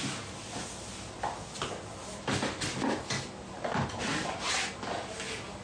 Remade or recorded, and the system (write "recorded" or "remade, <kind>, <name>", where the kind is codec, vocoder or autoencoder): recorded